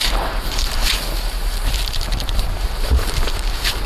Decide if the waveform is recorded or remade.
remade